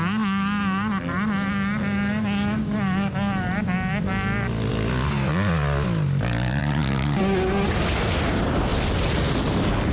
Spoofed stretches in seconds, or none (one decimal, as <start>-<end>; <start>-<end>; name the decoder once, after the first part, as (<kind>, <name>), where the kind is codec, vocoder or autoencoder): 6.6-7.2 (vocoder, BigVGAN v2)